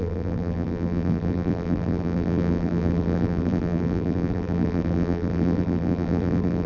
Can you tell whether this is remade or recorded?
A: remade